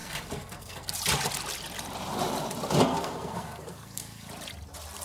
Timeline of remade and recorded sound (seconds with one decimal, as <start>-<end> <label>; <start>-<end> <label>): 0.0-0.9 remade; 0.9-2.9 recorded; 2.9-4.3 remade; 4.3-5.0 recorded

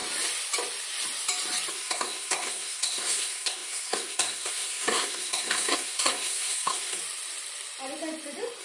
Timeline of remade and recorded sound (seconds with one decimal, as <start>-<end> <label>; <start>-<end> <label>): 0.0-1.7 recorded; 1.7-7.0 remade; 7.0-8.6 recorded

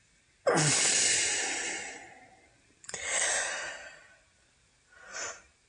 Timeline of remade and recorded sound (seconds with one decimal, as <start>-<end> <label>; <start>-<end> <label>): 0.0-5.7 recorded

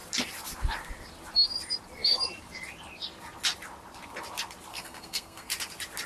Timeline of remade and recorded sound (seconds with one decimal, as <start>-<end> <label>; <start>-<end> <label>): 0.0-4.7 recorded; 4.7-5.5 remade; 5.5-6.1 recorded